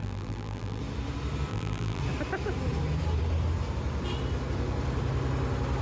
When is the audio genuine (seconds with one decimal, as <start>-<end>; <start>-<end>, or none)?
0.8-1.5; 2.0-5.8